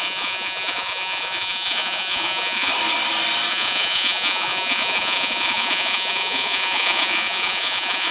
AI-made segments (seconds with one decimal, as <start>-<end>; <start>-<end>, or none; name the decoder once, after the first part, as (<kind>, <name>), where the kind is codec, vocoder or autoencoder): 0.0-2.7 (vocoder, Vocos); 3.5-8.1